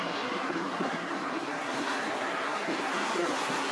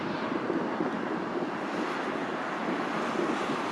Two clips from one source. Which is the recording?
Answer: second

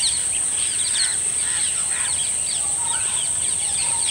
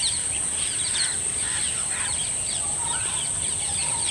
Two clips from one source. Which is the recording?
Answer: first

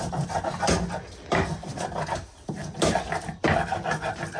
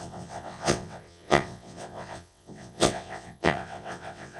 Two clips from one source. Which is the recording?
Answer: first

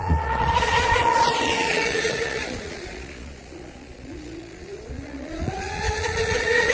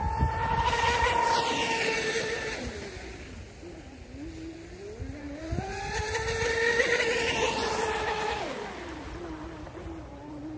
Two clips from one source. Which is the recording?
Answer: second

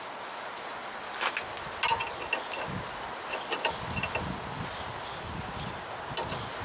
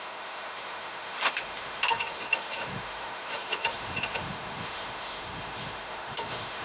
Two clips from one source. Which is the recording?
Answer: first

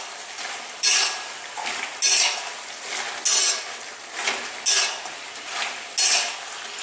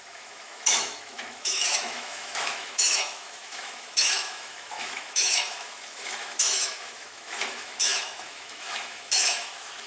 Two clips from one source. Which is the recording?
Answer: first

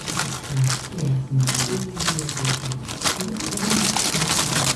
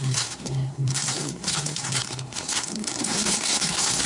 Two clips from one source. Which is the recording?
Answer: first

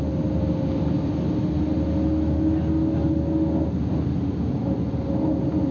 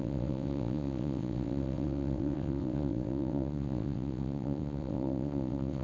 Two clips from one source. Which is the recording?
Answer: first